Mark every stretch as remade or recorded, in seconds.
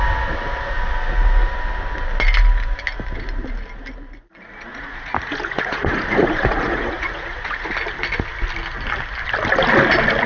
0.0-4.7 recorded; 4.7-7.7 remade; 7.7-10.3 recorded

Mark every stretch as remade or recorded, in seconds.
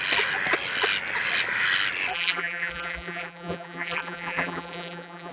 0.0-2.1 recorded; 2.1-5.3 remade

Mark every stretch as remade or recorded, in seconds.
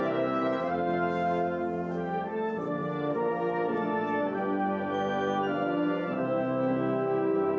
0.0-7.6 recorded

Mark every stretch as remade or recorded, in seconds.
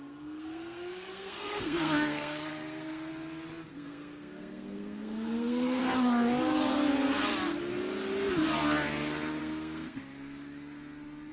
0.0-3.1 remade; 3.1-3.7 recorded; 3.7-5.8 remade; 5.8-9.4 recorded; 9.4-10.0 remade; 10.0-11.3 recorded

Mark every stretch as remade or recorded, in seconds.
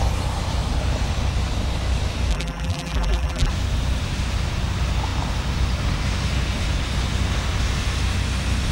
0.0-2.3 recorded; 2.3-3.5 remade; 3.5-8.7 recorded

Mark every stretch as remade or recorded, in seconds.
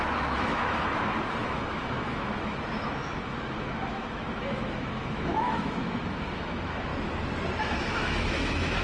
0.0-6.9 remade; 6.9-7.6 recorded; 7.6-8.8 remade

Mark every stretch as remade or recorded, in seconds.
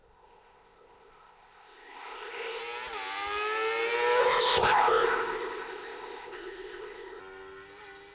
0.0-2.6 remade; 2.6-4.2 recorded; 4.2-7.2 remade; 7.2-8.1 recorded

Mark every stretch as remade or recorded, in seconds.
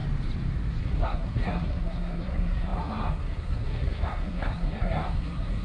0.0-0.8 recorded; 0.8-5.6 remade